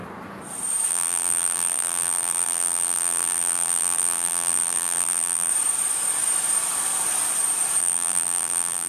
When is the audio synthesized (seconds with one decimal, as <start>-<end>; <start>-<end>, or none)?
0.9-5.5; 7.8-8.9